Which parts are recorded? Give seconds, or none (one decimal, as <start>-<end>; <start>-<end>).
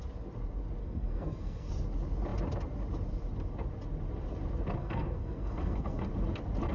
0.0-0.8; 1.7-4.8; 6.1-6.7